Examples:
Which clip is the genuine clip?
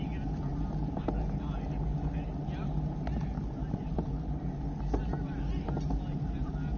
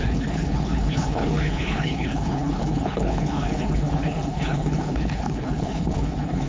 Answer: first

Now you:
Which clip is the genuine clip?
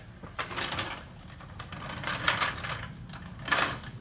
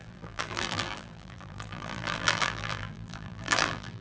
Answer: first